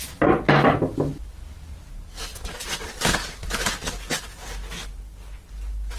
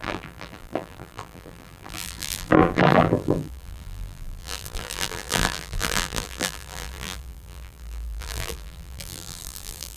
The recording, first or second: first